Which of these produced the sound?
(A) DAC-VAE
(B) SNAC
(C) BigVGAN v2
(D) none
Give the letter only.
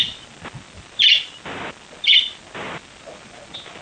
D